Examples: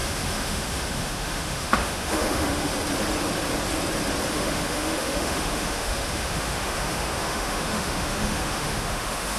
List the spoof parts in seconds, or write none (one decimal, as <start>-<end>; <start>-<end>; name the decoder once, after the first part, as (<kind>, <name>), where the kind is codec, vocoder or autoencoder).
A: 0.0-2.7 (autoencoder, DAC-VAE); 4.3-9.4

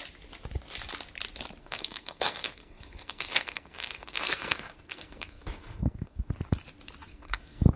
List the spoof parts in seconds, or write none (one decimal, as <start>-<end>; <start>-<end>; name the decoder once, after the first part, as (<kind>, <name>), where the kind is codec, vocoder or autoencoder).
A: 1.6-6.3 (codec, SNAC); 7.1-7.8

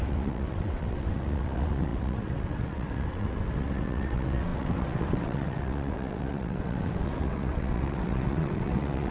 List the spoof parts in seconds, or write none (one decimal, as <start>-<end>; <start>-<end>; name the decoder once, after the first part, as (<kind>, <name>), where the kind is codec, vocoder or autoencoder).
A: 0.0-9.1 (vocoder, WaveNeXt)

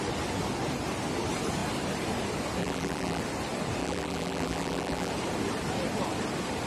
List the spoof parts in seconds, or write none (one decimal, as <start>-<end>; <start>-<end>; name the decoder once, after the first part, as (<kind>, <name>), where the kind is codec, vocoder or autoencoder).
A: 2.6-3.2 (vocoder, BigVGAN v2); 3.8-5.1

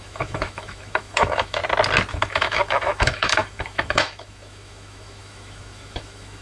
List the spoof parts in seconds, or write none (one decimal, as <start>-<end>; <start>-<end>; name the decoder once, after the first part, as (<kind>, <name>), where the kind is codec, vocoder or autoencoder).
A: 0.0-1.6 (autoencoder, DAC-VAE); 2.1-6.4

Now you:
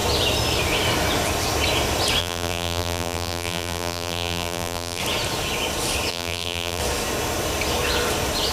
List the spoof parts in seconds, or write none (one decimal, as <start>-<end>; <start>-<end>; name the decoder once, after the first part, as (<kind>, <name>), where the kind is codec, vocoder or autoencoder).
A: 2.2-5.0 (vocoder, BigVGAN v2); 6.1-6.8